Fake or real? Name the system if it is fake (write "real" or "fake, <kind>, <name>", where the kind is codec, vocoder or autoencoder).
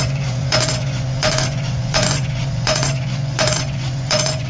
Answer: fake, vocoder, Vocos